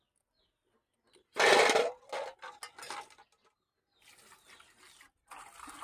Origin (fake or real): real